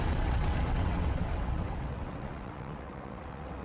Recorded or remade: remade